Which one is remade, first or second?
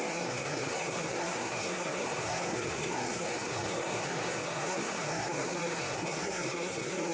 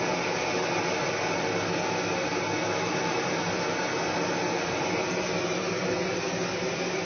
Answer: first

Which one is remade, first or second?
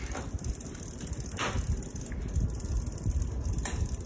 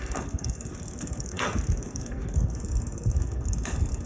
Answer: second